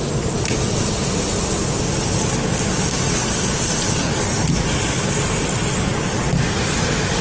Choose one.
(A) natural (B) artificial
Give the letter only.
A